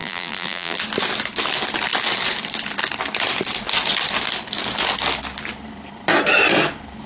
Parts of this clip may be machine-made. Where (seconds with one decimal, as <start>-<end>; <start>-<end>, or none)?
0.0-0.8